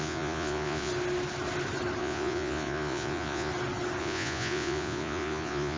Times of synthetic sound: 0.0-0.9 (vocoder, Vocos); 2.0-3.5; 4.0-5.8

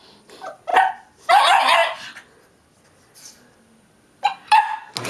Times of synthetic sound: none

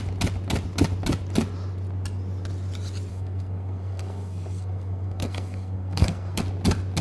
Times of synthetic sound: 3.1-6.4 (codec, SNAC)

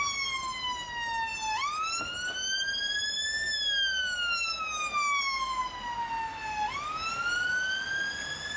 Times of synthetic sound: none

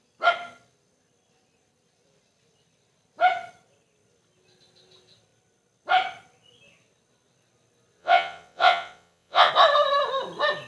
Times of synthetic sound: 8.0-9.5 (vocoder, WaveNeXt)